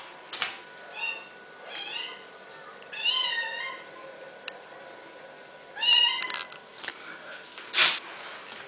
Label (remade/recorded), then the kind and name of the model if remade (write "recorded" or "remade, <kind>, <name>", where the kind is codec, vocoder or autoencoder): recorded